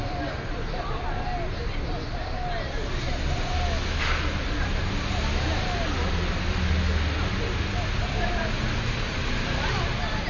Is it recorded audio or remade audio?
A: recorded